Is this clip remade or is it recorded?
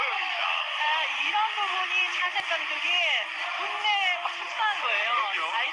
recorded